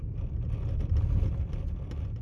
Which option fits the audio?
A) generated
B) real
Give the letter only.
B